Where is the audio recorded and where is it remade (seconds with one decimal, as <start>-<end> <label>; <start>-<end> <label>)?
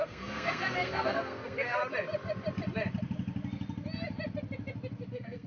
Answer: 0.0-1.8 remade; 1.8-5.1 recorded; 5.1-5.5 remade